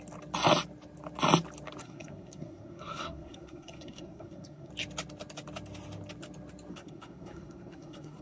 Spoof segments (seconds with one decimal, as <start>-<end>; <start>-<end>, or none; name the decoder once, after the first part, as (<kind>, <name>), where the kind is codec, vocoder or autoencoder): 1.8-4.7 (codec, SNAC); 6.7-8.2